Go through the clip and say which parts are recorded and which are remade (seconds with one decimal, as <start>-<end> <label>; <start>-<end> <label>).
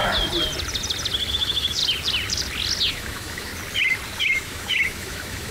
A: 0.0-1.3 recorded; 1.3-1.8 remade; 1.8-2.9 recorded; 2.9-3.5 remade; 3.5-4.2 recorded; 4.2-5.5 remade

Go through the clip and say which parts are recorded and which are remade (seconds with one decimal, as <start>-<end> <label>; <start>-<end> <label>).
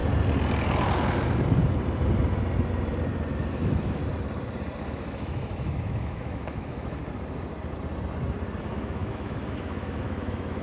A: 0.0-3.5 recorded; 3.5-4.0 remade; 4.0-4.9 recorded; 4.9-7.0 remade; 7.0-8.6 recorded; 8.6-10.6 remade